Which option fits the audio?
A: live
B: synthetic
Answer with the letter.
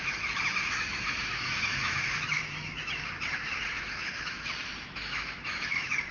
B